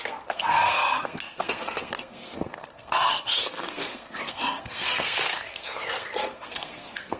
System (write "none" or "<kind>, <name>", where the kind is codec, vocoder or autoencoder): codec, SNAC